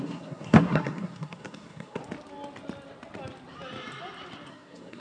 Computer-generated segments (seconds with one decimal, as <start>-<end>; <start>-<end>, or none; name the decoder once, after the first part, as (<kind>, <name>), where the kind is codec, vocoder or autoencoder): 0.0-2.0 (codec, SNAC); 4.5-5.0